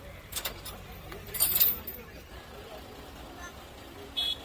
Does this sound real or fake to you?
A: fake